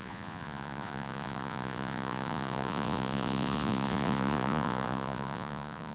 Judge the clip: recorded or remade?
remade